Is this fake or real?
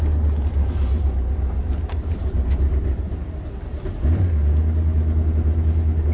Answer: real